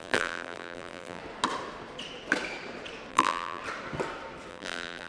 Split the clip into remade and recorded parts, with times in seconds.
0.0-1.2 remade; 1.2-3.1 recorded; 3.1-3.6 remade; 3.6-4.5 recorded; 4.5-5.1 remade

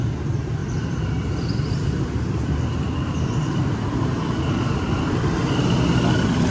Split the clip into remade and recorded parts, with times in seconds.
0.0-0.6 recorded; 0.6-4.5 remade; 4.5-6.5 recorded

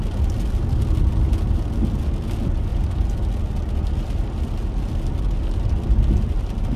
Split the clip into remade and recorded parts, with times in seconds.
0.0-2.7 recorded; 2.7-3.7 remade; 3.7-6.8 recorded

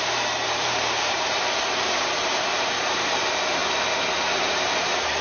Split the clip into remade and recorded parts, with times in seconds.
0.0-3.6 remade; 3.6-4.4 recorded; 4.4-5.2 remade

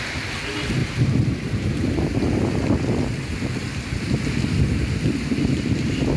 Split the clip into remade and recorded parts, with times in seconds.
0.0-0.8 recorded; 0.8-2.0 remade; 2.0-6.2 recorded

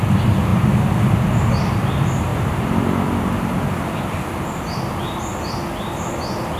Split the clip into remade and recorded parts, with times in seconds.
0.0-2.3 recorded; 2.3-4.0 remade; 4.0-6.6 recorded